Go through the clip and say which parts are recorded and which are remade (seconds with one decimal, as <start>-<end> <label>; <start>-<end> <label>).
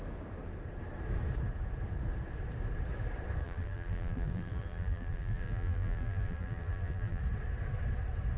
0.0-3.4 recorded; 3.4-7.2 remade; 7.2-8.4 recorded